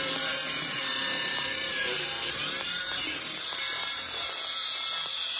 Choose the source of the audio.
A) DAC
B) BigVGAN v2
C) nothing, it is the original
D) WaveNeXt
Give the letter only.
B